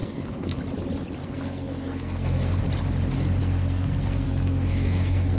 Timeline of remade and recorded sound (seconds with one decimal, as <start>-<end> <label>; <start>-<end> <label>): 0.0-0.6 remade; 0.6-1.2 recorded; 1.2-2.6 remade; 2.6-3.4 recorded; 3.4-5.4 remade